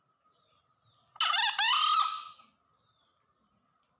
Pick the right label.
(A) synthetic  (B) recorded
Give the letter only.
B